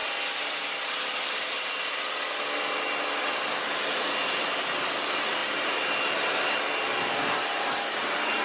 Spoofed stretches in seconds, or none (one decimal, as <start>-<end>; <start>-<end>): none